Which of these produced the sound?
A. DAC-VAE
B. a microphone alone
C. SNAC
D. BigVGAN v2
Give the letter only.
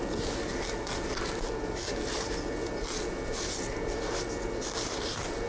B